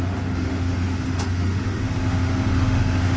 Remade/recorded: remade